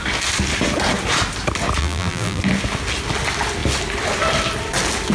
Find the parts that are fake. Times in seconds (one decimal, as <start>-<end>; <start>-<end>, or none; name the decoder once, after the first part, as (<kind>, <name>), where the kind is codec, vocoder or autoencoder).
1.8-2.4 (vocoder, BigVGAN v2)